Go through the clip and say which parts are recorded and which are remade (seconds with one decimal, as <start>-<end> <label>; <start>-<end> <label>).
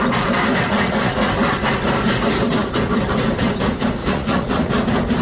0.0-0.7 recorded; 0.7-1.3 remade; 1.3-4.0 recorded; 4.0-4.7 remade; 4.7-5.2 recorded